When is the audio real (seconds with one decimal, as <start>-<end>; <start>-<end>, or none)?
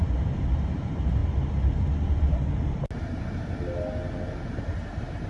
1.2-4.4